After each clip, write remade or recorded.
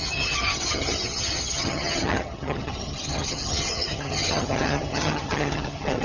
remade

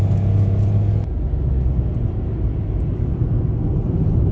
recorded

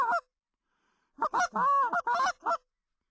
recorded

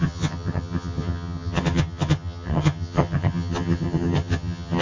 remade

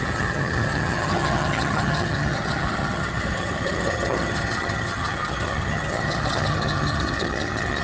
remade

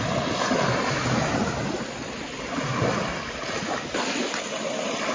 recorded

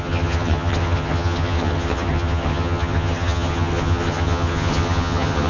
remade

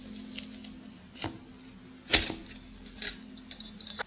recorded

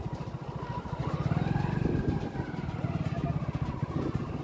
recorded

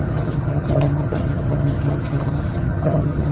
remade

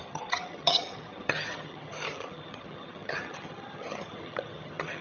remade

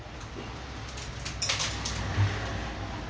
recorded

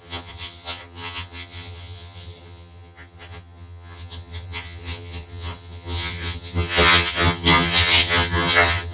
remade